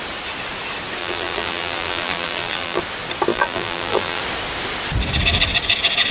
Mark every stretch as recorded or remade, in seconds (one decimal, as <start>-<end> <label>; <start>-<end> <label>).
0.0-1.0 recorded; 1.0-2.8 remade; 2.8-3.3 recorded; 3.3-4.2 remade; 4.2-6.1 recorded

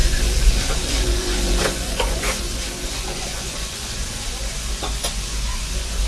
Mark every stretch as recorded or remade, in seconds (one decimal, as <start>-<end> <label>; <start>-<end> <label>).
0.0-6.1 remade

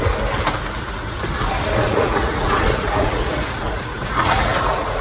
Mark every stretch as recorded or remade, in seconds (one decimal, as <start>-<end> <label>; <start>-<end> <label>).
0.0-1.8 recorded; 1.8-5.0 remade

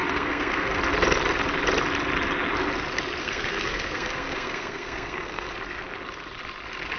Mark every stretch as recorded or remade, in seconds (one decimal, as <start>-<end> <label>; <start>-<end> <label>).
0.0-0.8 remade; 0.8-3.2 recorded; 3.2-5.5 remade; 5.5-7.0 recorded

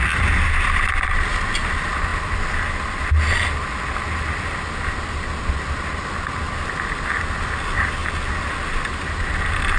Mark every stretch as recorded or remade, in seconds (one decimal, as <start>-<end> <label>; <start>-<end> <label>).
0.0-9.8 recorded

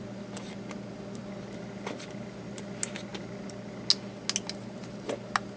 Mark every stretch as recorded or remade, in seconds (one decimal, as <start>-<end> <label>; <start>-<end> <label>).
0.0-5.6 recorded

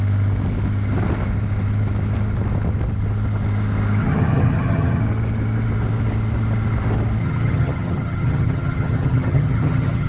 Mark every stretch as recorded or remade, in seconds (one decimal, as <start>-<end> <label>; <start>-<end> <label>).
0.0-4.0 recorded; 4.0-5.0 remade; 5.0-7.2 recorded; 7.2-10.1 remade